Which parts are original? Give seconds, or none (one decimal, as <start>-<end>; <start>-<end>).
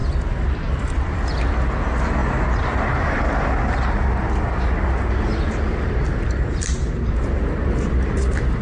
1.2-2.2; 3.2-5.3